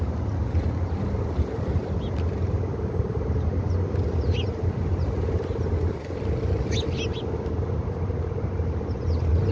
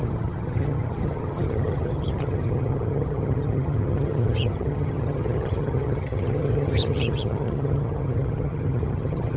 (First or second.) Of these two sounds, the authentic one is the first